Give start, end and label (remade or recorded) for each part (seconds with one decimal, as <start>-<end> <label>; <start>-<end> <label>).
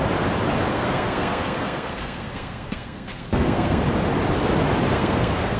0.0-0.7 recorded; 0.7-3.8 remade; 3.8-4.9 recorded; 4.9-5.6 remade